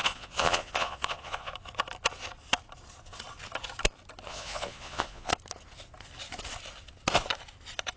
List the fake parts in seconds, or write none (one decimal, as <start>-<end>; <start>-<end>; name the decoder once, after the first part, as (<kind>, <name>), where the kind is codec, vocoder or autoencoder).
0.0-1.5 (vocoder, Vocos); 4.3-5.3